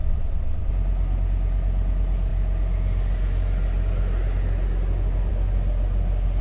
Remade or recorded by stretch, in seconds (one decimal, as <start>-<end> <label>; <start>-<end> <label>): 0.0-0.7 remade; 0.7-6.4 recorded